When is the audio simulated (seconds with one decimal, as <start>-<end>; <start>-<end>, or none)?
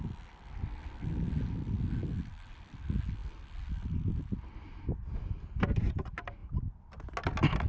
none